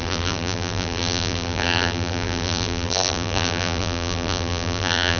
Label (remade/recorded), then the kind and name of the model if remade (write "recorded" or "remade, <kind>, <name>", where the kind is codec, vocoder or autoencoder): remade, vocoder, BigVGAN v2